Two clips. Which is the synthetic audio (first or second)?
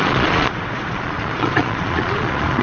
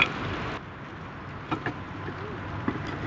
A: first